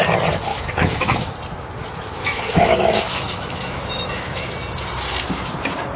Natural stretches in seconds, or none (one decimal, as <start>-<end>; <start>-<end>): 0.0-0.5; 1.3-1.8; 4.5-6.0